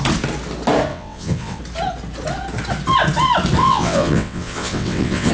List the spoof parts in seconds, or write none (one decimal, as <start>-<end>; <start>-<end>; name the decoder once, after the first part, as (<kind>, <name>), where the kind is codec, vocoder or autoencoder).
0.9-1.6 (vocoder, WaveNeXt); 3.6-5.3